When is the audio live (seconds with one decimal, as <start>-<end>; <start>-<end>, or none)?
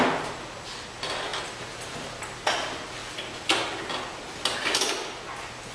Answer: 0.0-1.3; 2.3-5.7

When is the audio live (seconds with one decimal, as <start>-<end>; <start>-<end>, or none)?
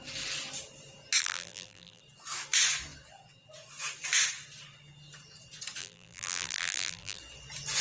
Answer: 0.0-1.2; 2.0-5.8; 7.2-7.8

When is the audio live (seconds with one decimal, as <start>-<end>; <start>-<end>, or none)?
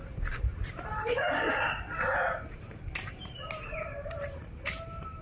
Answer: 1.7-2.2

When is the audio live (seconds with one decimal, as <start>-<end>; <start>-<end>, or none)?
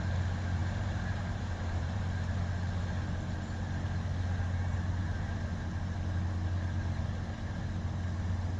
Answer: 0.0-0.6; 2.0-8.6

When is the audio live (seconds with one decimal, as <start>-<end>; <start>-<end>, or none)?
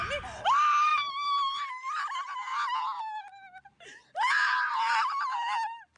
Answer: 0.0-0.9; 1.7-6.0